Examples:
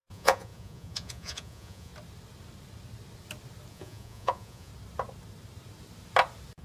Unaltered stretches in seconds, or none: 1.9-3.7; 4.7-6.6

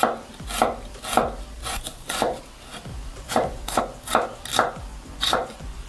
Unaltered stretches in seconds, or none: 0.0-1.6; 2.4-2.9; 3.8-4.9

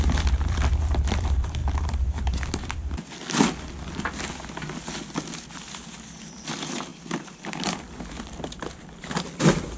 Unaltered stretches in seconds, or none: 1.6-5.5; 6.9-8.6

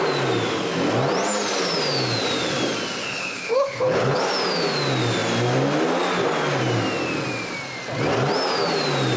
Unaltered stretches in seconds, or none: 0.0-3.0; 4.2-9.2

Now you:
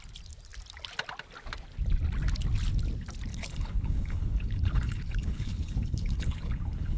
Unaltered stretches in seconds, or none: 0.0-3.3

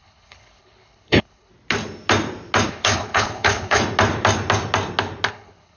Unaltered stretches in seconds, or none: 1.5-2.7; 3.8-5.3